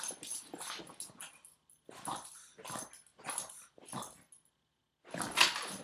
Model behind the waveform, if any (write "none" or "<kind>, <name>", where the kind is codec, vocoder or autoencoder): none